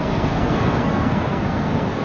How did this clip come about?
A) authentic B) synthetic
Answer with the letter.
B